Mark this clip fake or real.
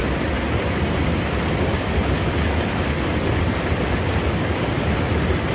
real